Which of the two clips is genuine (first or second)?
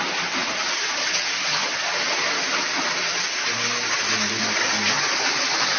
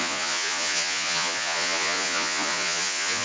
first